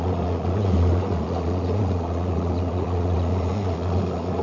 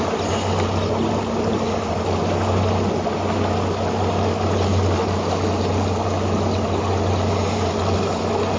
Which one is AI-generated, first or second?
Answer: first